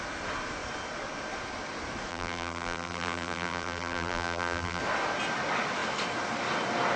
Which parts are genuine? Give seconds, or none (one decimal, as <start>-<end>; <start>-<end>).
0.0-2.1; 4.8-7.0